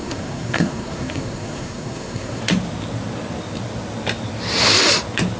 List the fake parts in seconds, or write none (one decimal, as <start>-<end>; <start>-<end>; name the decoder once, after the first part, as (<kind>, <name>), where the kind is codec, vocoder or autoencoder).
0.0-2.4 (codec, SNAC)